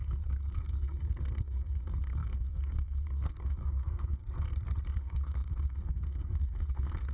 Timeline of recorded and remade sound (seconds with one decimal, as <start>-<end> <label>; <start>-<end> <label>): 0.0-4.2 remade; 4.2-5.0 recorded; 5.0-7.1 remade